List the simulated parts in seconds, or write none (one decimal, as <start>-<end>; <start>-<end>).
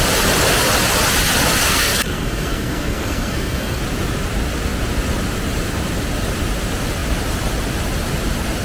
1.6-3.8